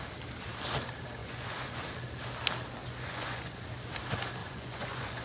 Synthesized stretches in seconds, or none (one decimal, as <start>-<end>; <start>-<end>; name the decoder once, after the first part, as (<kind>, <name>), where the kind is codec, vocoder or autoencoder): 1.2-1.9 (vocoder, Vocos); 2.8-3.6; 4.4-5.2